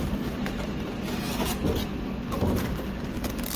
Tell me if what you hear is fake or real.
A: real